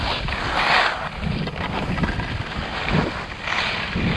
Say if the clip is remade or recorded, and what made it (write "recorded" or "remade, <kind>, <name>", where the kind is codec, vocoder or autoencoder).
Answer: recorded